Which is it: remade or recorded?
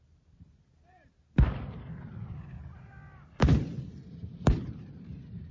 recorded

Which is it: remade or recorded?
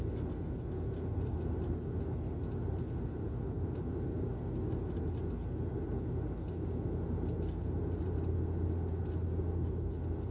recorded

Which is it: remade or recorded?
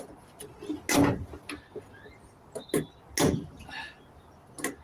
recorded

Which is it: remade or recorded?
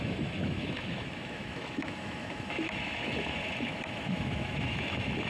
remade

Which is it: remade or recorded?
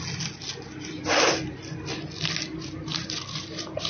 recorded